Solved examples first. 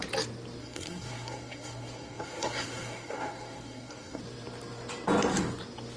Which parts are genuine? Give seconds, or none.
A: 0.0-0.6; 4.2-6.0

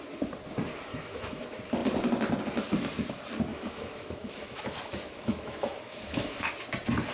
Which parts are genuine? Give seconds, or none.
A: 0.0-0.9; 1.4-3.5; 6.5-7.1

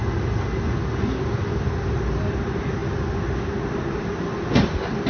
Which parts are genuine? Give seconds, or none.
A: 0.0-5.1

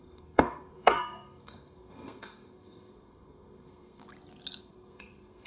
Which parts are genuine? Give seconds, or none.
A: 4.0-4.6

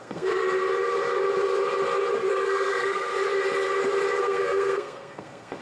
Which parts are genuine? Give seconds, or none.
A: 0.4-2.3; 3.1-4.2

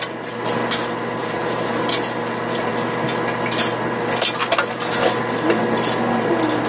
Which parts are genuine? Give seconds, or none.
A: 0.0-1.2; 1.9-6.7

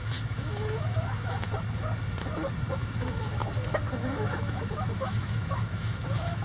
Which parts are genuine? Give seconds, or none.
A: 1.5-2.7; 3.4-3.9